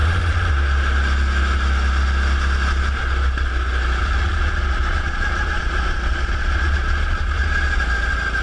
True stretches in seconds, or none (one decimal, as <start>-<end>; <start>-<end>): 0.5-4.0; 7.8-8.4